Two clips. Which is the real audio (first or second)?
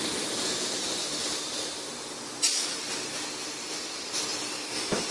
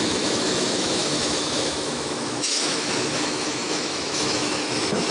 first